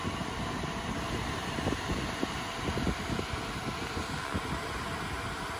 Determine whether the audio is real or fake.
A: real